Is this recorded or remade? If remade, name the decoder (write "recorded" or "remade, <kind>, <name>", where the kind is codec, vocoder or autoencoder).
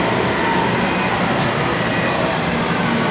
recorded